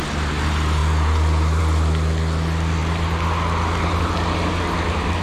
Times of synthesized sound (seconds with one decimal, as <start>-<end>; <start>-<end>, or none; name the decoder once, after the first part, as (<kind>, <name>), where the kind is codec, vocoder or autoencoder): none